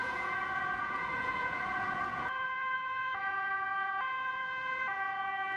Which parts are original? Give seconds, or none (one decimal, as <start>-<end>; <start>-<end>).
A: none